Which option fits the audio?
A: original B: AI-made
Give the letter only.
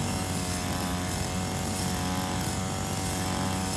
A